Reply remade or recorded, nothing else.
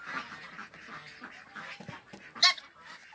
recorded